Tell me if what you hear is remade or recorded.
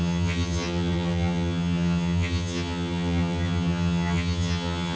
remade